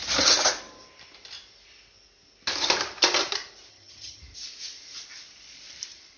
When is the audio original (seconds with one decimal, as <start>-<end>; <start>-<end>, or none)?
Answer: 0.0-3.7; 4.2-6.2

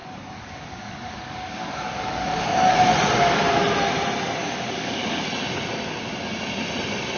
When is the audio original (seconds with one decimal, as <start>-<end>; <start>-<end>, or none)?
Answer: 2.8-4.4; 5.2-7.2

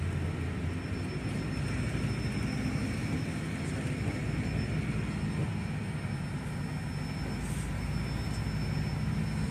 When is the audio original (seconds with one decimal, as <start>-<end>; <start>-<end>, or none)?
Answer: 0.0-9.5

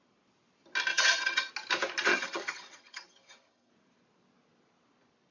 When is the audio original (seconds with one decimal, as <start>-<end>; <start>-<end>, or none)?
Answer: 0.0-0.9; 1.5-2.1; 3.7-5.3